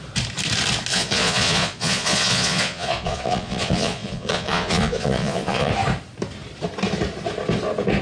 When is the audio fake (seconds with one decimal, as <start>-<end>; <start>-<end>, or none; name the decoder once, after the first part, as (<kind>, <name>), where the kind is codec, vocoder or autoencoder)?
0.9-5.7 (vocoder, Vocos)

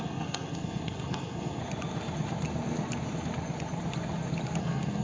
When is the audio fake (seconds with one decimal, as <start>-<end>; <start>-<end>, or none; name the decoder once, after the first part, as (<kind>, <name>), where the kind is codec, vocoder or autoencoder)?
0.0-1.6 (codec, SNAC); 4.6-5.0

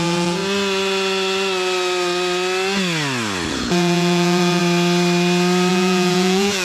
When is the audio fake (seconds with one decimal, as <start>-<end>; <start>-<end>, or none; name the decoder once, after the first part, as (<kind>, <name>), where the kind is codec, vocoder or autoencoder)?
0.0-0.4 (vocoder, Vocos); 3.5-4.6; 5.7-6.6

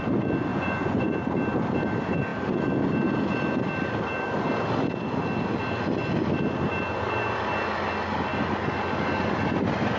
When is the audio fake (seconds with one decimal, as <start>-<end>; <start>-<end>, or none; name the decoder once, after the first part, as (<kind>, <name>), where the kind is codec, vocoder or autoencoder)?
0.5-1.1 (vocoder, Vocos)

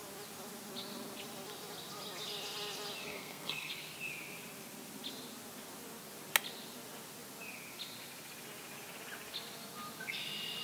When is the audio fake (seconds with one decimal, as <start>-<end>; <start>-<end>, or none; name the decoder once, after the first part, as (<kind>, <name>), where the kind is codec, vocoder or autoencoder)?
3.0-3.7 (codec, SNAC)

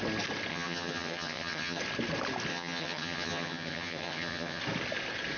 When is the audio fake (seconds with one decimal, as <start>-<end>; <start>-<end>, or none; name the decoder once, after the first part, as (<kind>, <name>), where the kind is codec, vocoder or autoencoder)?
0.5-1.8 (vocoder, HiFi-GAN); 2.5-4.6